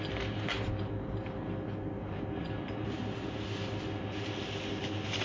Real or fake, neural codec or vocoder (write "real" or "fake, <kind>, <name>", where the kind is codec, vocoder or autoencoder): real